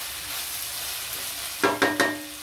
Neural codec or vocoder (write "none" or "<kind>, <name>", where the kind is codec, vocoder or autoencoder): none